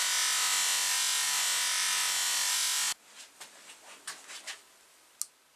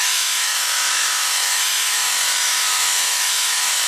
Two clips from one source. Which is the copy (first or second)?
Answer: second